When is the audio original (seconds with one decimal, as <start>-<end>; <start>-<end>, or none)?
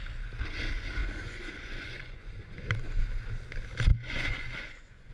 0.0-1.0; 3.0-3.9